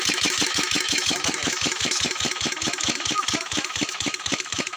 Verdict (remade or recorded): remade